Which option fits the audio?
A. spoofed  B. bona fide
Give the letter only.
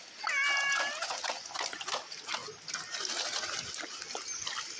B